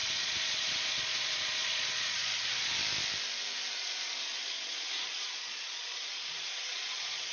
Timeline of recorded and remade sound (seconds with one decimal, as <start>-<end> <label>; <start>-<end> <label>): 0.0-2.8 remade; 2.8-4.5 recorded; 4.5-7.3 remade